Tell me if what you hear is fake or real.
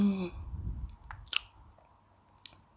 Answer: real